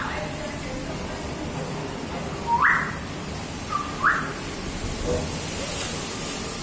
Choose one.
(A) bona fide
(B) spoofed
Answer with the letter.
A